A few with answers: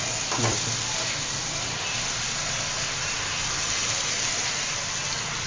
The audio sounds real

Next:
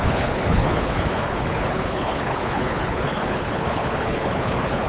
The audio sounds fake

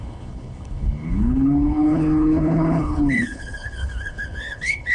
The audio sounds fake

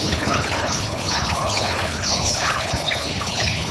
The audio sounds fake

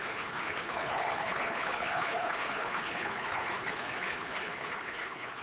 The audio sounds fake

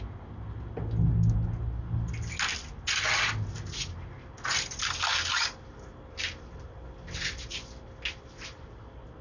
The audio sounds real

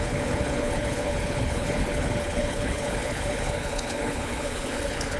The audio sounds fake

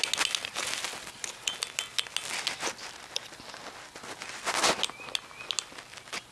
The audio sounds real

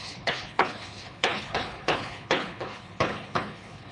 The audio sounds fake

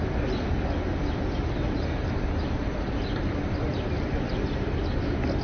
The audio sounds real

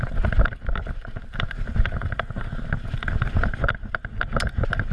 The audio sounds real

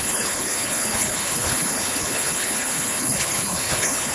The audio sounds fake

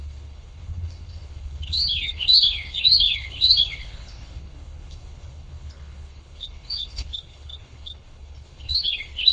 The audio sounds fake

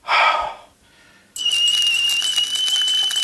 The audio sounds real